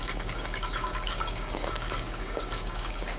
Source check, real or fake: fake